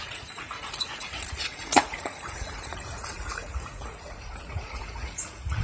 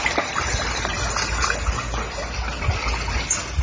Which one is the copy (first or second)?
first